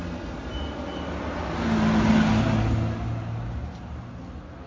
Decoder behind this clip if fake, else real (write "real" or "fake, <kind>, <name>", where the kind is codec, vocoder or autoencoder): real